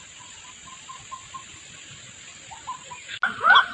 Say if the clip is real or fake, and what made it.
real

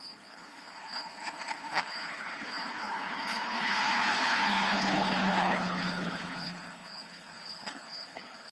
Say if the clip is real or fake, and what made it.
fake, codec, HILCodec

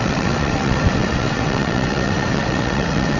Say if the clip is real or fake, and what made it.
fake, vocoder, WaveNeXt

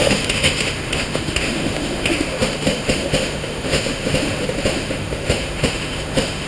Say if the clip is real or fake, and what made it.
fake, autoencoder, DAC-VAE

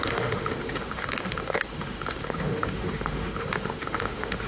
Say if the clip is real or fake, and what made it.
fake, autoencoder, DAC-VAE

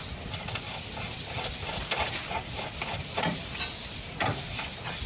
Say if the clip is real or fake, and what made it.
real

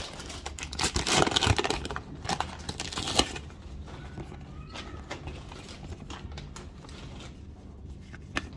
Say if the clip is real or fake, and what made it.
real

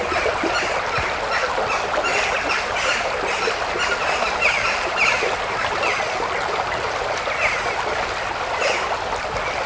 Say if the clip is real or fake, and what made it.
real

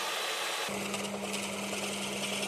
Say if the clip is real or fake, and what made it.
real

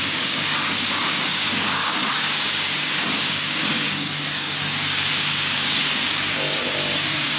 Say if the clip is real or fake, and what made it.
fake, codec, DAC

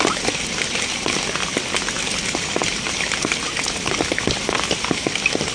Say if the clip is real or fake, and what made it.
real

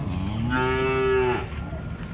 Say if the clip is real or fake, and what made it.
real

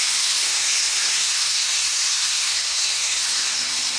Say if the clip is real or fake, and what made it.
fake, codec, SNAC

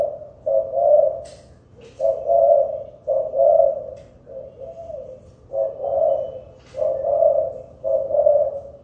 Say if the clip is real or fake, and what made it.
real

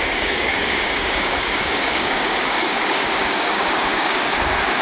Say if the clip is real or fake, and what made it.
fake, codec, DAC